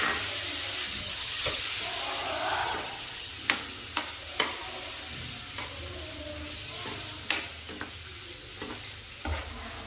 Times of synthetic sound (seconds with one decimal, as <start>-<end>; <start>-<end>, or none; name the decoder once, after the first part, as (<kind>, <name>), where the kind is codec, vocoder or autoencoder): 0.9-1.6 (vocoder, HiFi-GAN); 2.6-3.3